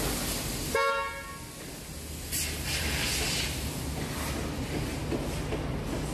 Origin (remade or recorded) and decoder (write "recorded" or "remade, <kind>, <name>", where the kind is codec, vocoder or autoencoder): recorded